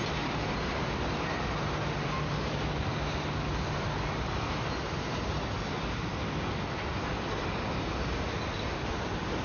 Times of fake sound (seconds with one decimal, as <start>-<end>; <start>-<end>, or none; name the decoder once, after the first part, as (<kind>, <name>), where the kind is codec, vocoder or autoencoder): none